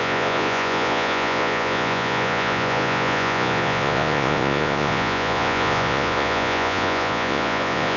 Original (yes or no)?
no